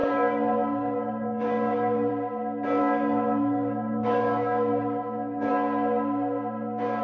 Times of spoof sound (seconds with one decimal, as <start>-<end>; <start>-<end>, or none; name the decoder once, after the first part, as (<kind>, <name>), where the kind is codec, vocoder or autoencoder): 0.0-2.1 (codec, DAC); 2.8-5.5